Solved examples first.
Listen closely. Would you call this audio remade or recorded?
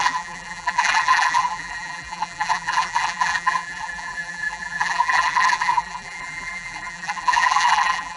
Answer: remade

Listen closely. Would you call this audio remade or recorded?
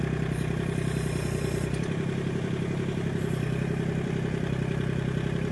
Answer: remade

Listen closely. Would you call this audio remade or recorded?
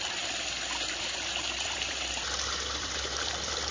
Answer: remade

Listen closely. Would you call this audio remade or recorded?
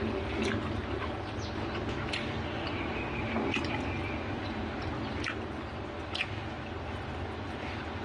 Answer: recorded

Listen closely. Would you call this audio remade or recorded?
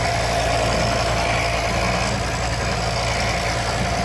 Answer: recorded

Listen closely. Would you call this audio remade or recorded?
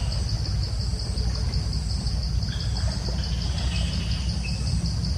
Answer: recorded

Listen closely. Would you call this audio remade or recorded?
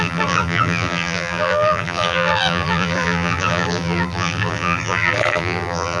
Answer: remade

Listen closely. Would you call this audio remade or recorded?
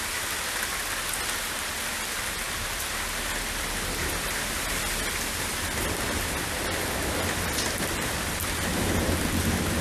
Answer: recorded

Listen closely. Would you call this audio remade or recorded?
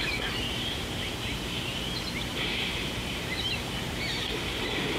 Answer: remade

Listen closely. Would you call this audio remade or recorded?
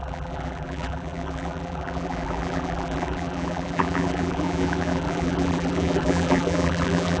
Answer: remade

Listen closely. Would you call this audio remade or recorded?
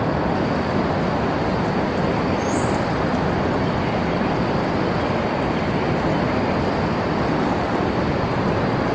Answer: recorded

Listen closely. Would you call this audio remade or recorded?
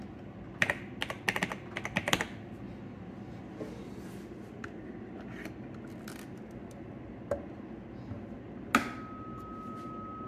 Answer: recorded